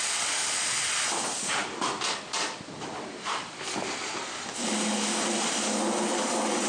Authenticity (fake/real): real